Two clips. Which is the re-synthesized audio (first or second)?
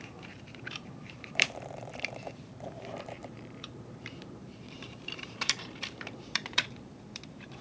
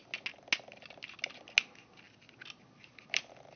first